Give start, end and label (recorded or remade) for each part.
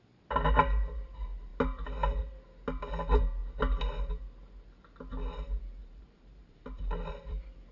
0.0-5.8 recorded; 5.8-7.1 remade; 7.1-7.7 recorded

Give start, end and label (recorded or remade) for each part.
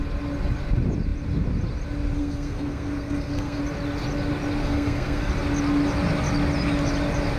0.0-2.2 recorded; 2.2-3.6 remade; 3.6-4.6 recorded; 4.6-5.3 remade; 5.3-7.4 recorded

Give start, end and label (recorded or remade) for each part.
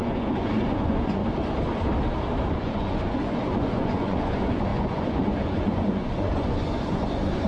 0.0-1.2 remade; 1.2-2.5 recorded; 2.5-7.5 remade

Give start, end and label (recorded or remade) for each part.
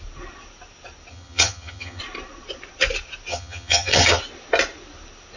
0.0-1.1 recorded; 1.1-2.0 remade; 2.0-3.3 recorded; 3.3-4.2 remade; 4.2-5.4 recorded